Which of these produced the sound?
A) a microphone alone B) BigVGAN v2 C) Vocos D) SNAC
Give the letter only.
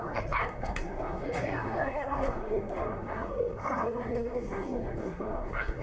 D